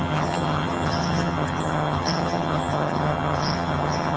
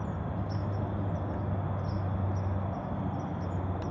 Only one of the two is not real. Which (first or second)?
first